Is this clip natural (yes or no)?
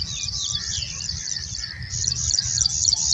yes